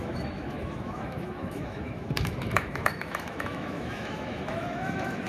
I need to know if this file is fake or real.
fake